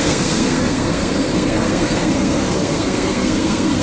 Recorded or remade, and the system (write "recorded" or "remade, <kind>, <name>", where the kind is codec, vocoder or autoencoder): remade, codec, SNAC